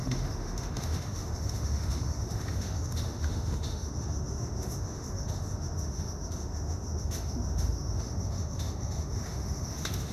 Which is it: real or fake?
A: fake